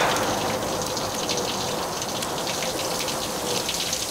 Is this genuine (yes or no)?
yes